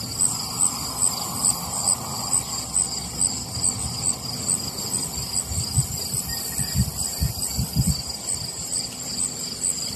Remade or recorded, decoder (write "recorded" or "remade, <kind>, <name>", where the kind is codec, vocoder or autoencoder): recorded